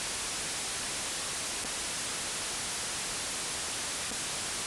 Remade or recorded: recorded